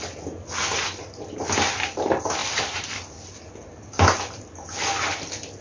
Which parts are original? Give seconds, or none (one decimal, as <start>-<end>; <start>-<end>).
0.0-5.6